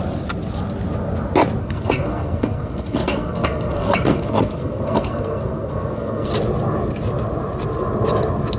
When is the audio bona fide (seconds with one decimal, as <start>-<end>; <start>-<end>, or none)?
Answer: 0.0-1.6; 6.3-8.6